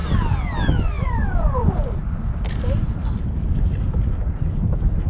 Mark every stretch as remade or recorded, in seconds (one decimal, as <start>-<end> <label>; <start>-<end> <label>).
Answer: 0.0-2.6 remade; 2.6-3.0 recorded; 3.0-5.1 remade